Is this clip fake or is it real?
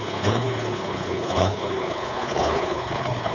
fake